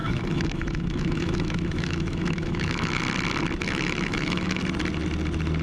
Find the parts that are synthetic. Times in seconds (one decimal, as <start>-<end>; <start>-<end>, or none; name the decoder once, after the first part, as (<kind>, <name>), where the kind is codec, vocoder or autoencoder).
0.0-3.0 (autoencoder, DAC-VAE); 3.6-4.6